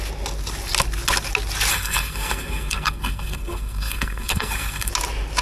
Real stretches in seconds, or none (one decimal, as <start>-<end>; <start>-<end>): 0.0-1.7; 4.9-5.4